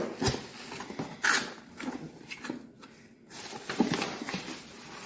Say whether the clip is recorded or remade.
recorded